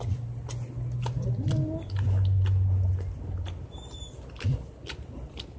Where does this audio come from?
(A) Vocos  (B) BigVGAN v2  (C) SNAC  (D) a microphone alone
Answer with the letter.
D